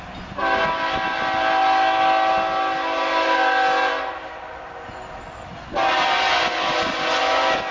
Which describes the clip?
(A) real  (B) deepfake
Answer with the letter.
A